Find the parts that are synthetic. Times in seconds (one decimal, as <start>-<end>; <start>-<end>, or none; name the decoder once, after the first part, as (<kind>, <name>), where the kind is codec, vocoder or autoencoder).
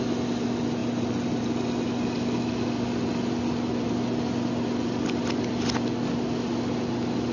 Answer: none